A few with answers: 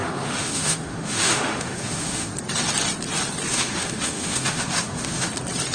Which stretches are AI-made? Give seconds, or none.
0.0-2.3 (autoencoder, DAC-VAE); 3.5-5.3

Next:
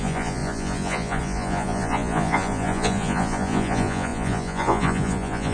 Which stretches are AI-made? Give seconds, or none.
0.0-5.5 (vocoder, Vocos)